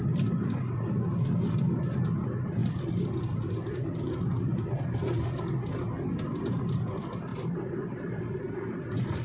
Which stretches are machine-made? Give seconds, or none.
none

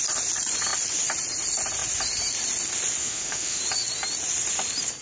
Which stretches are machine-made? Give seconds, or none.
3.0-3.6 (autoencoder, DAC-VAE)

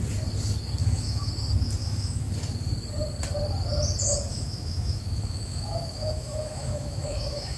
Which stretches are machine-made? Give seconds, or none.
0.8-1.3 (autoencoder, DAC-VAE); 1.8-2.3; 4.3-7.6

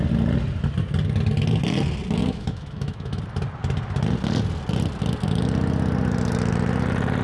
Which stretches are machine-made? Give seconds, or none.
2.2-3.2 (autoencoder, DAC-VAE)

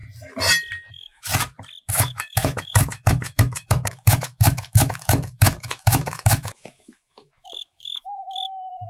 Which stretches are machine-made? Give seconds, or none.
0.9-1.3 (autoencoder, DAC-VAE); 1.9-8.9

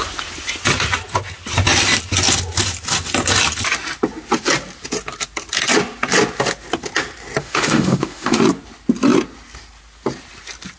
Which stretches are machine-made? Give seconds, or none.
7.4-8.4 (autoencoder, DAC-VAE)

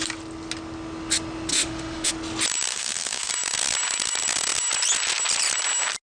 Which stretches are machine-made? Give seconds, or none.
1.5-2.1 (autoencoder, DAC-VAE); 2.7-3.3

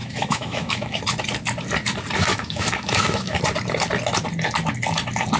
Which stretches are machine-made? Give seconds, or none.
0.0-1.0 (autoencoder, DAC-VAE); 2.3-3.4